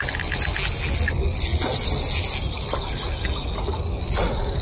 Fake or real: real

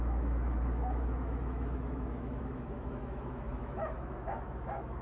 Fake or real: fake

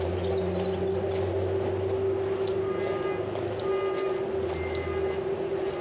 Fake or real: real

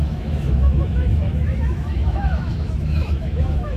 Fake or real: fake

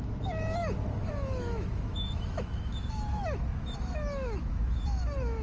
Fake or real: fake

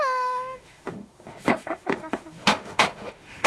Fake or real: fake